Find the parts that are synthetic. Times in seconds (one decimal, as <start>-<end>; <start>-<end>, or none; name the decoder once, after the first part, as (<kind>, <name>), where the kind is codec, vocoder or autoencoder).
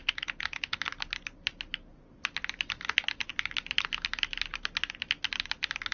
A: none